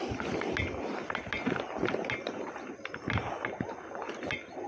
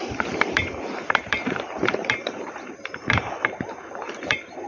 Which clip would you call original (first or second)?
first